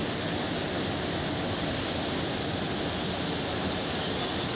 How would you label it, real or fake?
real